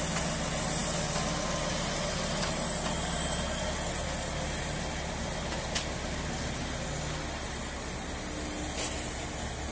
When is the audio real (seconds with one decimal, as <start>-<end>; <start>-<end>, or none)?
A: 0.0-9.7